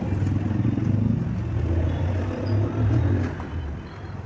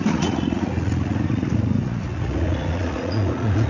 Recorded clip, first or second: first